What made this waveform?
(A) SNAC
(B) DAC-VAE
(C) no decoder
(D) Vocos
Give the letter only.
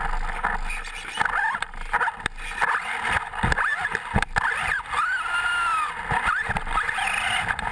C